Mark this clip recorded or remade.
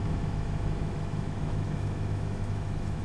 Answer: remade